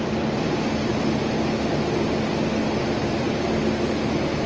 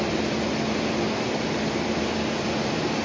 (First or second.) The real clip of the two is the first